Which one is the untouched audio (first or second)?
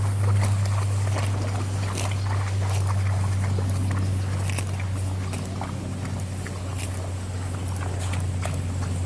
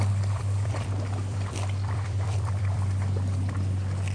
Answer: first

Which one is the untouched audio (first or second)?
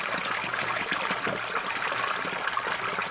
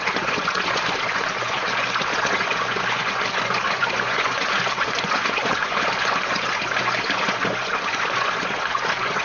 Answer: first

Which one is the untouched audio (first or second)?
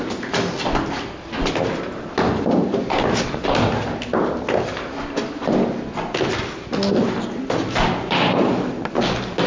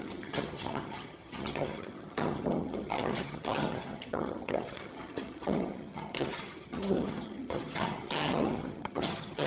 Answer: first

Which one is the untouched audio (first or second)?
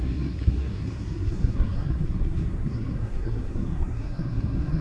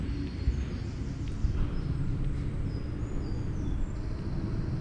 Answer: second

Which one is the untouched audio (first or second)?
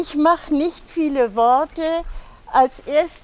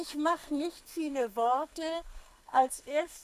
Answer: first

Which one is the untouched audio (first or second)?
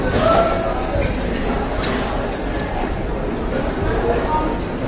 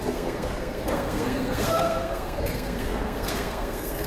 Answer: first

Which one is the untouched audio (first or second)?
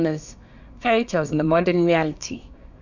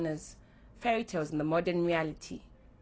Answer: second